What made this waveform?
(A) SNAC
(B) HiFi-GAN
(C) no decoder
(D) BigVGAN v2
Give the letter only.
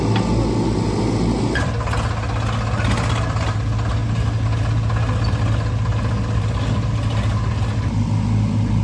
C